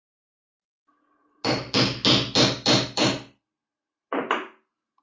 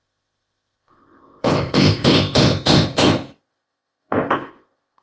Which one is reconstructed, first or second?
second